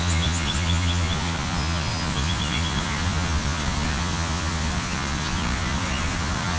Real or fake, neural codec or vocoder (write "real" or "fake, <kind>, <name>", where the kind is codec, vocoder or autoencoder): fake, vocoder, Vocos